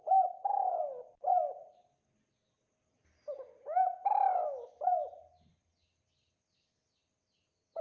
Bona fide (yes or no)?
yes